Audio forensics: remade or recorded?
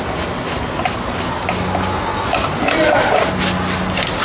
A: recorded